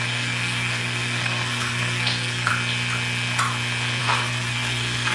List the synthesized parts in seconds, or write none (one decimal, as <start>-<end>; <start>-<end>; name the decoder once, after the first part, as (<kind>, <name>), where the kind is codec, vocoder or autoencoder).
0.0-2.5 (codec, SNAC); 4.0-5.1